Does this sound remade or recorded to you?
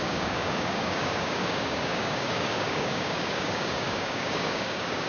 remade